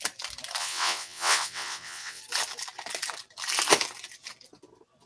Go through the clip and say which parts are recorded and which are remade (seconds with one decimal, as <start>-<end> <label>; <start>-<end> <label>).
0.0-0.6 recorded; 0.6-2.2 remade; 2.2-5.1 recorded